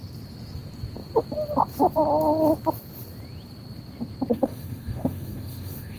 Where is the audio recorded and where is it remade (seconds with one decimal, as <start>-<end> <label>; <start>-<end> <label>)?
0.0-4.3 recorded; 4.3-6.0 remade